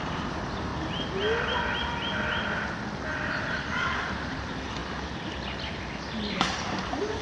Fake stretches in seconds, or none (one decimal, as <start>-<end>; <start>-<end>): 0.0-0.7; 3.4-4.8; 6.3-7.2